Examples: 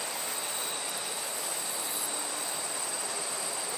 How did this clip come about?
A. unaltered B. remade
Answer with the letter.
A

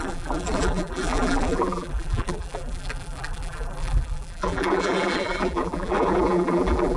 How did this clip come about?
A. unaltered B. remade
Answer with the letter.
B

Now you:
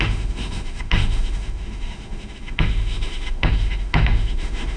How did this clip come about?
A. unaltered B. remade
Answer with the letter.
B